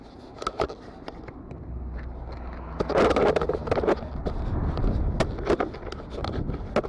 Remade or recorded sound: recorded